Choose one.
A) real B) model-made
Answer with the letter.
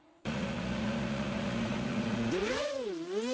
B